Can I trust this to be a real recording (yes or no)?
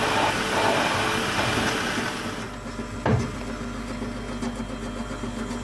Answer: yes